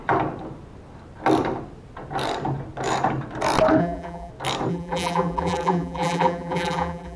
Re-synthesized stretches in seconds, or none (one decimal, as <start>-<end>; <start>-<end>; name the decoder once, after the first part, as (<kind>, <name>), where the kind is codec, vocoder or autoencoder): 3.8-4.3 (vocoder, BigVGAN v2); 4.7-7.2